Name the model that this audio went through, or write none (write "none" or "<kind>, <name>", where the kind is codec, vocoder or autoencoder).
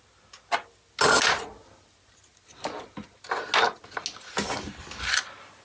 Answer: none